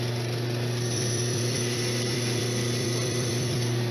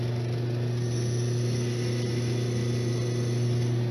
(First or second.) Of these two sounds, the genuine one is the second